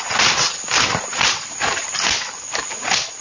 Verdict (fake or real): real